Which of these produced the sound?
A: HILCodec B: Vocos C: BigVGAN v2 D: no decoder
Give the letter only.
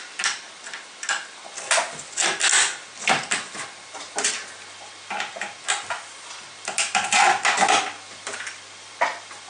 D